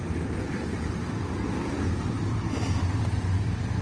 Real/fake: fake